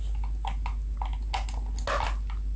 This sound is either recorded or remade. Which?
recorded